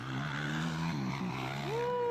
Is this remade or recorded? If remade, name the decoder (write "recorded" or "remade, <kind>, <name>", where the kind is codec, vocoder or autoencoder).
recorded